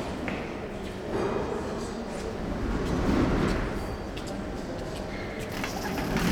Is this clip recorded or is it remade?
recorded